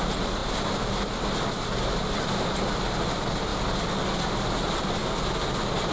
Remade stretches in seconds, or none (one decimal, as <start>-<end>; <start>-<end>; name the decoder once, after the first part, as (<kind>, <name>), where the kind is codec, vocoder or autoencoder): none